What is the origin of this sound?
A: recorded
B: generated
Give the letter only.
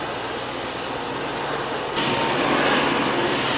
A